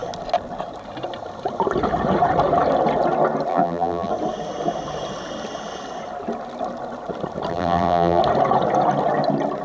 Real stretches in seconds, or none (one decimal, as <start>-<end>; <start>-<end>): 0.0-3.5; 4.1-7.5; 8.2-9.6